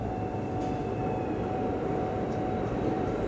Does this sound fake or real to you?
fake